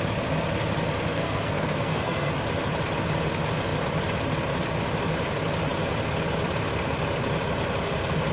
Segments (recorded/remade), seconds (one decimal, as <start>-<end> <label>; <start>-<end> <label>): 0.0-1.1 recorded; 1.1-2.3 remade; 2.3-8.3 recorded